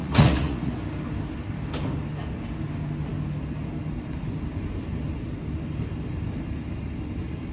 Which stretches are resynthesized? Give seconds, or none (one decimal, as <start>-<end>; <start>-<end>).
0.0-0.7